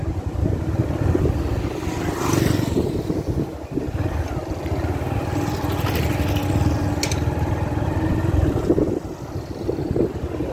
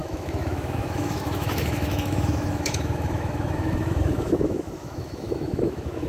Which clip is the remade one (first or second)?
second